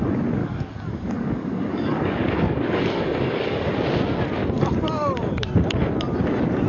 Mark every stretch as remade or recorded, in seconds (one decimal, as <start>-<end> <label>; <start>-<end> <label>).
0.0-0.4 recorded; 0.4-3.7 remade; 3.7-4.4 recorded; 4.4-5.3 remade; 5.3-6.7 recorded